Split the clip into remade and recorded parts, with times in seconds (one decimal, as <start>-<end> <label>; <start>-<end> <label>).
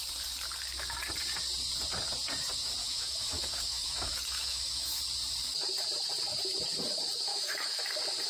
0.0-2.8 recorded; 2.8-5.0 remade; 5.0-7.3 recorded; 7.3-7.8 remade; 7.8-8.3 recorded